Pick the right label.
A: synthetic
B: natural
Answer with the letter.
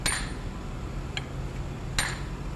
B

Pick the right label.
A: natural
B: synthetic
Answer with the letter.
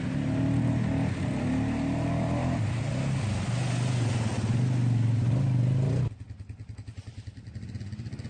A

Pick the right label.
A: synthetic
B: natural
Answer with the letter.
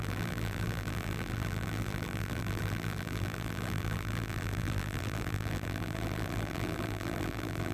A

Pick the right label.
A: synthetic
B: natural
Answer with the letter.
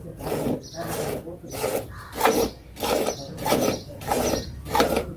A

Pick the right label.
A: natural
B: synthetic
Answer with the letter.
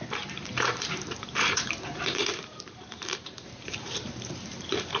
B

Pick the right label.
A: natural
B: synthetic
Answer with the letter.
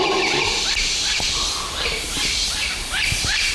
B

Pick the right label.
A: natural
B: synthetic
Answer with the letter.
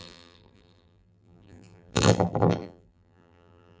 B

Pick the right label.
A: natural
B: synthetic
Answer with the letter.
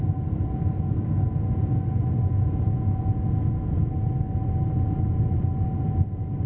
A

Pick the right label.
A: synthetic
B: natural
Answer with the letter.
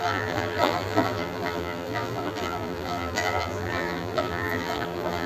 A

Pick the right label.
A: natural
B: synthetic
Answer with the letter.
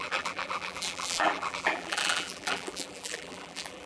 B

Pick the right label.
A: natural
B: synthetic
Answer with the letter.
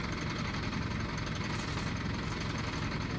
A